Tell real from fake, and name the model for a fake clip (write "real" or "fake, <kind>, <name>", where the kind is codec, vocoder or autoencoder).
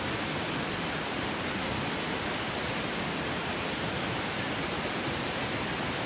real